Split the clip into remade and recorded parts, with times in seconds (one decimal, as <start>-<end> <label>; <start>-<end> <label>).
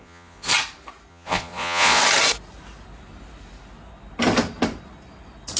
0.0-0.5 remade; 0.5-1.1 recorded; 1.1-2.0 remade; 2.0-5.6 recorded